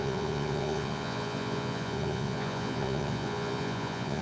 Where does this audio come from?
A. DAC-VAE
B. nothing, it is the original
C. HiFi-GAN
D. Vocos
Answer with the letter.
D